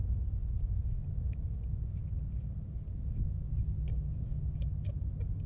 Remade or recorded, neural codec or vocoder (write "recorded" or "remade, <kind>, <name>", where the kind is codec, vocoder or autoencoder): recorded